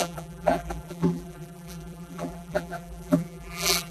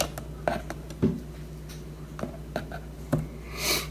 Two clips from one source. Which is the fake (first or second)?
first